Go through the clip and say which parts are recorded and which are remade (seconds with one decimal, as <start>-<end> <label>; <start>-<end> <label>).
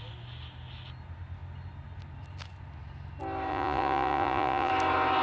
0.0-3.5 recorded; 3.5-4.7 remade; 4.7-5.2 recorded